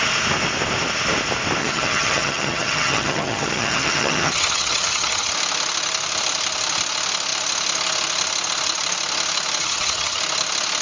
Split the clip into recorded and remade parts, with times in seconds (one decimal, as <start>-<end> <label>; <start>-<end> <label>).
0.0-1.6 recorded; 1.6-5.3 remade; 5.3-9.6 recorded; 9.6-10.2 remade; 10.2-10.8 recorded